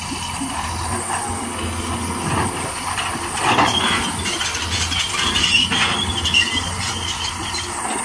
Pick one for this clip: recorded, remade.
recorded